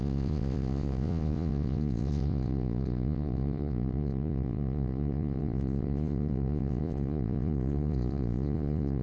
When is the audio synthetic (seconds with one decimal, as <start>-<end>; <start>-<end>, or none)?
0.0-9.0